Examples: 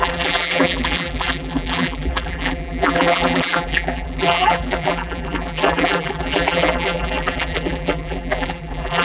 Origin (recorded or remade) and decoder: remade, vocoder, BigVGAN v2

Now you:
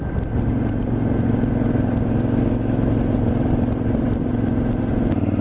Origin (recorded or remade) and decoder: recorded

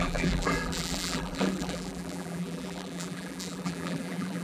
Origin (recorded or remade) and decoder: remade, vocoder, BigVGAN v2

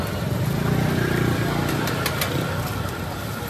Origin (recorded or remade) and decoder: recorded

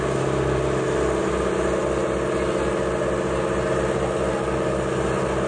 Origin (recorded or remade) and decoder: recorded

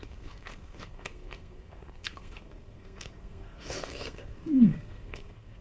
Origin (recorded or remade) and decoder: remade, codec, SNAC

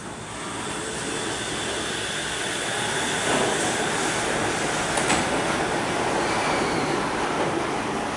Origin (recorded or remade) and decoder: recorded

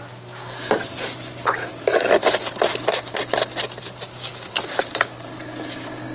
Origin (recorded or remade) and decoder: recorded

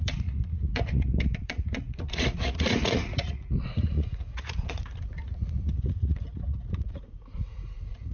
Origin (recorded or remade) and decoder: remade, vocoder, Vocos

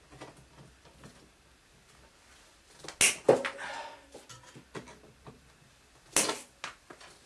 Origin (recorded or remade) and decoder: recorded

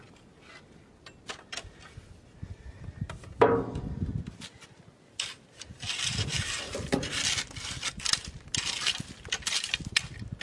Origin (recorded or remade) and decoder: recorded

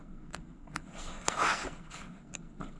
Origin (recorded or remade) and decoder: remade, codec, SNAC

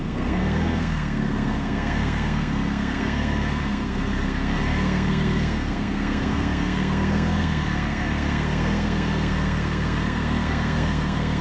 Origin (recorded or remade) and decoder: remade, codec, SNAC